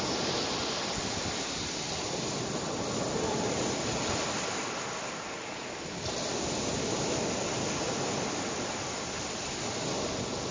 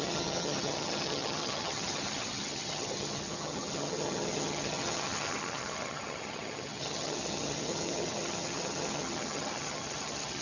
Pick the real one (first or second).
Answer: first